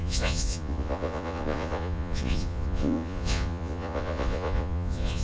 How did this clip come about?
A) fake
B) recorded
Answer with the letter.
A